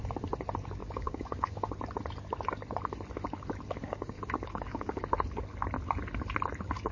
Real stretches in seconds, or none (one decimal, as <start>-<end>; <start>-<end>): 0.0-0.8; 1.7-3.8; 5.0-6.9